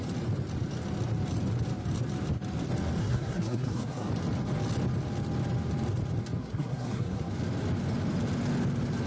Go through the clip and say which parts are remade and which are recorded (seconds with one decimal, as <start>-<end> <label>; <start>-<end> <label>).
0.0-3.0 recorded; 3.0-4.1 remade; 4.1-6.4 recorded; 6.4-7.3 remade; 7.3-9.1 recorded